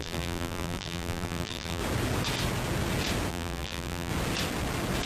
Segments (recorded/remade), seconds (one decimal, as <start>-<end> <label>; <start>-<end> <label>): 0.0-1.8 remade; 1.8-3.3 recorded; 3.3-4.1 remade; 4.1-5.1 recorded